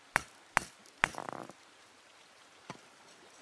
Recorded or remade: recorded